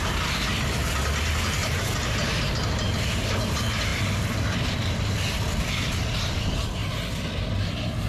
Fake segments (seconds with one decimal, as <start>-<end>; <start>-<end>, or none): 1.6-2.5